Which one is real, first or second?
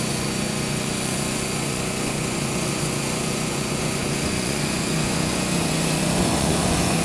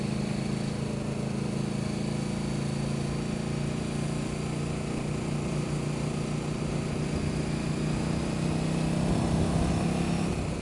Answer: second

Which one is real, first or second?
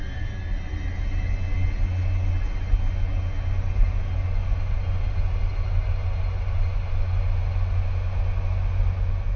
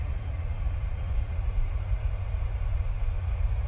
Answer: first